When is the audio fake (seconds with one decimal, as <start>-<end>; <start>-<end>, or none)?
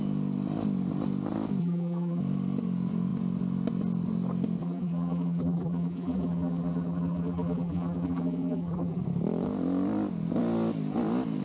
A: 1.6-2.2; 4.6-9.0